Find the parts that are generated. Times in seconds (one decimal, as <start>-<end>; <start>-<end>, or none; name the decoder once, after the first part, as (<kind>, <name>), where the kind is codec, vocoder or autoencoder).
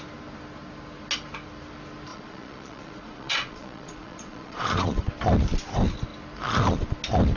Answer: 2.1-5.1 (vocoder, Vocos)